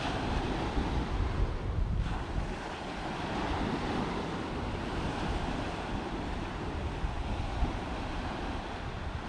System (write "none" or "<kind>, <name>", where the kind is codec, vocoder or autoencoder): none